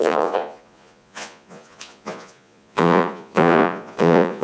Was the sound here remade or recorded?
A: remade